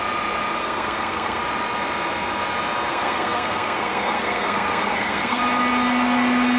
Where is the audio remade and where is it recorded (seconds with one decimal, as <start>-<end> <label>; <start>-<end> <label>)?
0.0-0.6 recorded; 0.6-1.4 remade; 1.4-2.9 recorded; 2.9-5.4 remade; 5.4-6.6 recorded